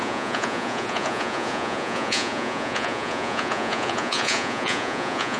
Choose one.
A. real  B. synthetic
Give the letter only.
B